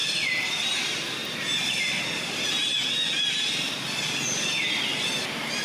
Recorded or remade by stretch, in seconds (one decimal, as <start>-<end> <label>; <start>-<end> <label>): 0.0-0.7 remade; 0.7-5.6 recorded